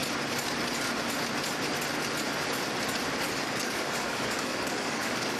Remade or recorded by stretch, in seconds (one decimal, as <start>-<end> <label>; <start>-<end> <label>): 0.0-3.2 recorded; 3.2-5.4 remade